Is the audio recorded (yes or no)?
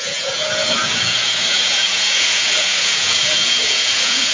no